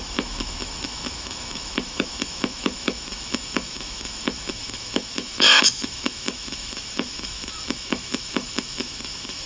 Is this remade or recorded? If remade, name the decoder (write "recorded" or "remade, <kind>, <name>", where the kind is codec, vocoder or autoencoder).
remade, autoencoder, DAC-VAE